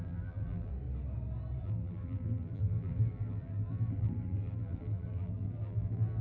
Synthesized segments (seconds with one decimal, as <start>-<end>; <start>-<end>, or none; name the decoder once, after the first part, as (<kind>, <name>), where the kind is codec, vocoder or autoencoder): 0.0-0.7 (vocoder, BigVGAN v2); 1.6-6.2